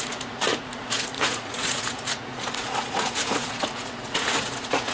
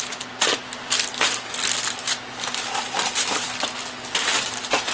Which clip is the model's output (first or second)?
first